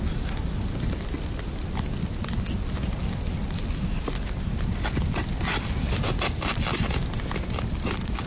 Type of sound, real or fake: real